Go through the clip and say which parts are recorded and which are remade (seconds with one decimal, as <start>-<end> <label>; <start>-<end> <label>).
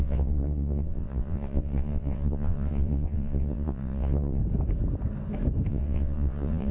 0.0-4.4 remade; 4.4-5.7 recorded; 5.7-6.7 remade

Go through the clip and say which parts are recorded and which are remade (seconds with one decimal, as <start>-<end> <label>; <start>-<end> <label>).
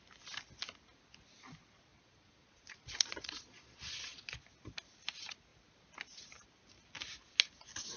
0.0-1.9 recorded; 1.9-4.4 remade; 4.4-8.0 recorded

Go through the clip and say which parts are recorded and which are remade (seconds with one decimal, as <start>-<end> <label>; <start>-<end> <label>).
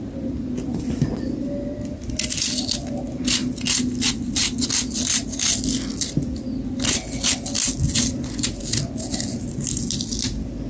0.0-10.7 recorded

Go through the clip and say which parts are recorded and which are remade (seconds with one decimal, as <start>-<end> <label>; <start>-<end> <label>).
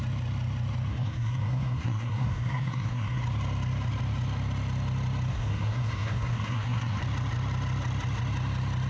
0.0-0.9 recorded; 0.9-3.2 remade; 3.2-5.3 recorded; 5.3-7.0 remade; 7.0-8.9 recorded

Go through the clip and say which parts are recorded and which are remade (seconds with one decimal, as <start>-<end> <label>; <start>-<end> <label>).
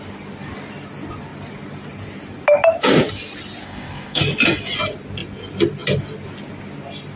0.0-3.6 recorded; 3.6-4.2 remade; 4.2-7.2 recorded